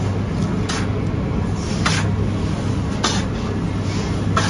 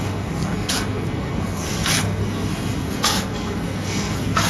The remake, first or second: second